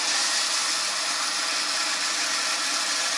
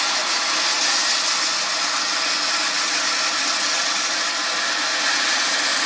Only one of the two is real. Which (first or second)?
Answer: second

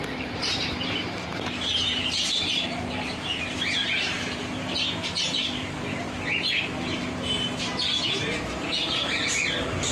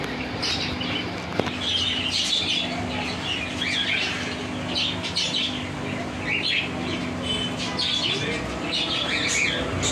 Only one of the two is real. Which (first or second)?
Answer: second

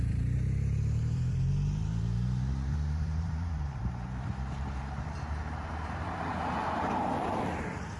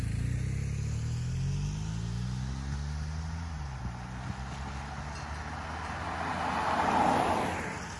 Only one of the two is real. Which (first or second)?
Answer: second